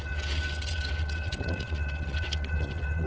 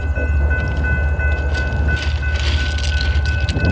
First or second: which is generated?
first